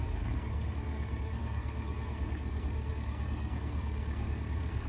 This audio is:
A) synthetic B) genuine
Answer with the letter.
A